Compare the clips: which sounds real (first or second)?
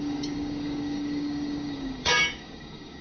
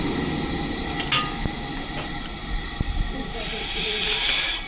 second